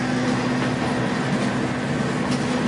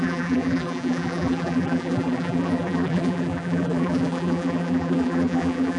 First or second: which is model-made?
second